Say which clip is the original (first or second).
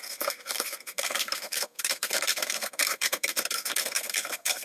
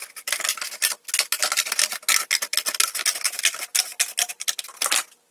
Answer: second